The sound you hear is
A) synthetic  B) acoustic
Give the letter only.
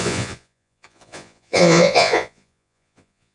A